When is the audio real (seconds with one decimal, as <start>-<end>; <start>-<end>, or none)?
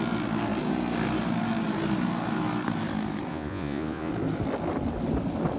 0.0-3.3; 4.1-5.6